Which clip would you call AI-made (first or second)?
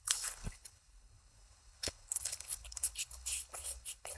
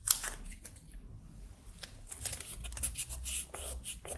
first